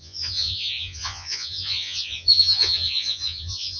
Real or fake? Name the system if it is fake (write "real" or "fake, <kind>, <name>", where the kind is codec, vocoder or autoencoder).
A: fake, vocoder, Vocos